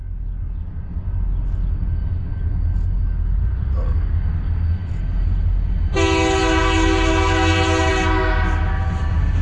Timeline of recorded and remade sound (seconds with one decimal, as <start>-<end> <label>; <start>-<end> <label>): 0.0-9.4 recorded